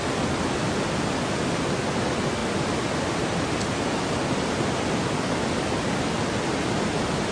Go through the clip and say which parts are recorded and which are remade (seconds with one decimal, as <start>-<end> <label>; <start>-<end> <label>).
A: 0.0-7.3 recorded

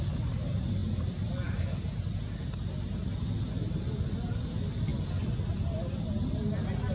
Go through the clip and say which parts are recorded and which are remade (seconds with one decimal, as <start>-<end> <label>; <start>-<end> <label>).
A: 0.0-6.9 recorded

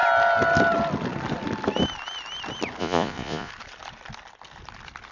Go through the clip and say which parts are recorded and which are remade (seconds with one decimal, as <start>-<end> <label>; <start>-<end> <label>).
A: 0.0-2.8 recorded; 2.8-3.5 remade; 3.5-5.1 recorded

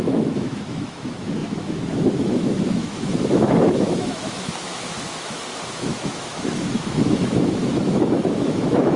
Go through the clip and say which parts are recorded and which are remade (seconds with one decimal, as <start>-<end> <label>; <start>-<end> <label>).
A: 0.0-9.0 remade

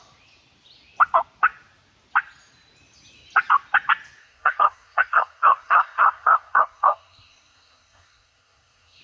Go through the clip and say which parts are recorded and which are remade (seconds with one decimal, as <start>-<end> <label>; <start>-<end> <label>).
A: 0.0-4.2 recorded; 4.2-9.0 remade

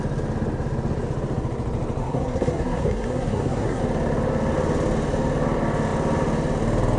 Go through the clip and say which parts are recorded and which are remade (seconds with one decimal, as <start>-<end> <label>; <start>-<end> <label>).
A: 0.0-2.0 recorded; 2.0-3.8 remade; 3.8-7.0 recorded

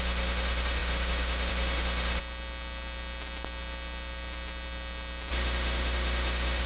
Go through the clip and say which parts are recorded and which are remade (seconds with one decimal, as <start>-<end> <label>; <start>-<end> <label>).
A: 0.0-2.2 remade; 2.2-5.3 recorded; 5.3-6.7 remade

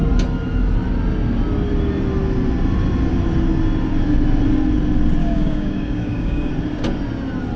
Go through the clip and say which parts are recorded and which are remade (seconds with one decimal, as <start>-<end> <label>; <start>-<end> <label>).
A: 0.0-5.2 recorded; 5.2-6.5 remade; 6.5-7.6 recorded